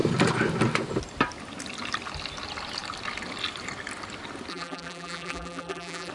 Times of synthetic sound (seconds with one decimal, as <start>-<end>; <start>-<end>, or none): 4.5-6.1